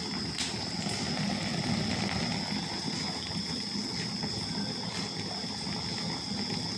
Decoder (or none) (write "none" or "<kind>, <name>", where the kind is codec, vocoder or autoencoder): none